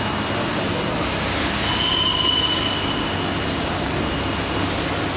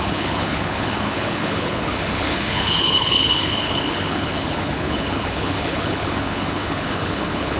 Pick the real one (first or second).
first